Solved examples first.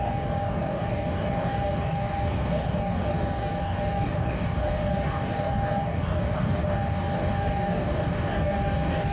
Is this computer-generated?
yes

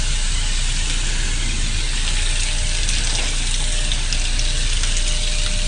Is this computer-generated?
no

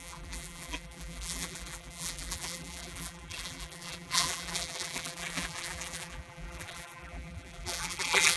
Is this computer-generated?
yes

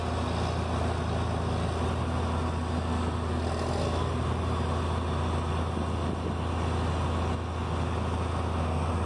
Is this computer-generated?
no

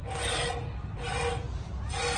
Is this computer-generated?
no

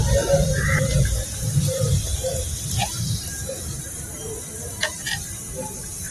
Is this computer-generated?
yes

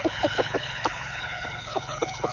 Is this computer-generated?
yes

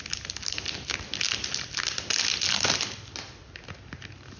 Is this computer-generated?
no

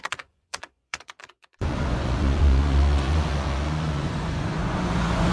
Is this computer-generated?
yes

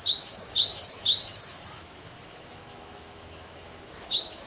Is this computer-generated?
yes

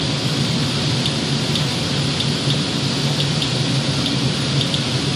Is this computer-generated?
no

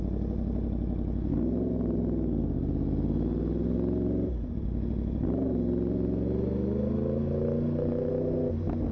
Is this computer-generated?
no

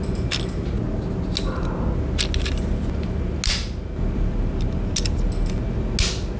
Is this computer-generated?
no